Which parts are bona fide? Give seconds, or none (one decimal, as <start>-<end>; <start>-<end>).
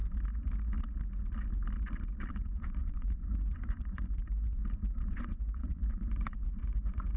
0.0-2.3; 4.6-5.1